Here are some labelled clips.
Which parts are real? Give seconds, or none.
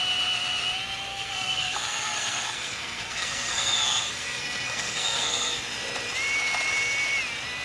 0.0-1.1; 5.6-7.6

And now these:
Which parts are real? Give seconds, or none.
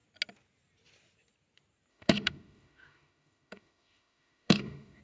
0.0-1.9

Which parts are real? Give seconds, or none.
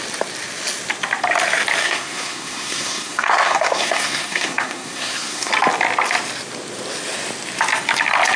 0.0-1.8; 5.5-8.4